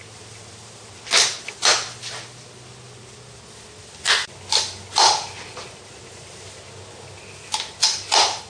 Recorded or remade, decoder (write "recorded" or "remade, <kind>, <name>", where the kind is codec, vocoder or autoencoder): recorded